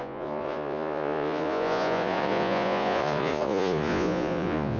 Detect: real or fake fake